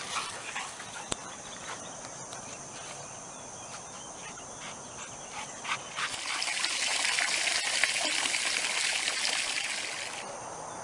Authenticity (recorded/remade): recorded